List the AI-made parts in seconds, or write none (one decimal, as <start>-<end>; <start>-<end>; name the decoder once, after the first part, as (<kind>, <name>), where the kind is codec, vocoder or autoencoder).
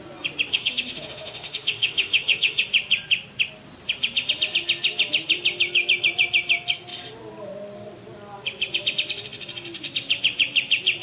0.5-2.6 (autoencoder, DAC-VAE)